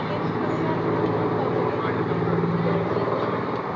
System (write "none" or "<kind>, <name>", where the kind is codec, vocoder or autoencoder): none